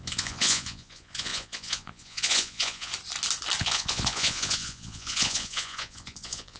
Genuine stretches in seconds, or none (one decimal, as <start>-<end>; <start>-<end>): 2.9-3.6